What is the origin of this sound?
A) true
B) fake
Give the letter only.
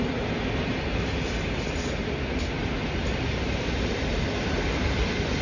A